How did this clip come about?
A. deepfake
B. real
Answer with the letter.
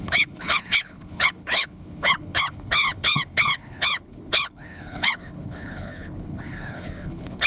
A